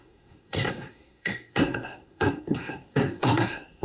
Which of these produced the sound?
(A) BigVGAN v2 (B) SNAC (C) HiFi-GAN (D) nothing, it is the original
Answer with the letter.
B